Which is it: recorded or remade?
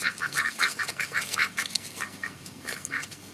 remade